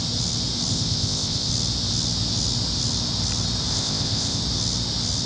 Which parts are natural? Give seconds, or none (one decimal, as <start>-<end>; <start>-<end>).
0.0-0.7; 1.5-3.7; 4.4-5.3